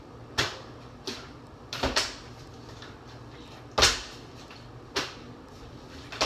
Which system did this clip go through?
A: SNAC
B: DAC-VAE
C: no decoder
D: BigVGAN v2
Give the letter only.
C